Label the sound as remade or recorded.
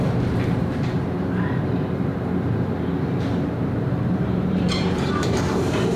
remade